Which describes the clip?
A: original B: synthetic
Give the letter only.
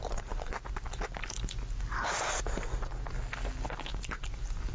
A